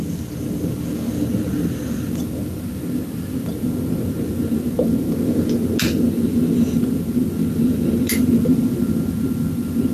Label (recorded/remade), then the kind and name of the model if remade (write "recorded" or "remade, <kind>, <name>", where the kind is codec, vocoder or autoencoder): recorded